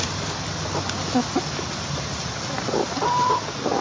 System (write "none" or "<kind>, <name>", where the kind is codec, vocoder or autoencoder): none